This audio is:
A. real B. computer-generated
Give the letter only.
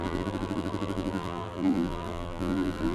B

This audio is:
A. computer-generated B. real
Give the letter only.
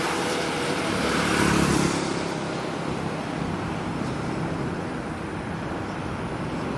A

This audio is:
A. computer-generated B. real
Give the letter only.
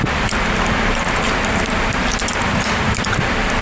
A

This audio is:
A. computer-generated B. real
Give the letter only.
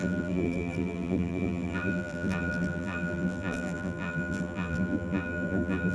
A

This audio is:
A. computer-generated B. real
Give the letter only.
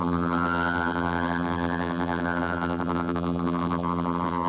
A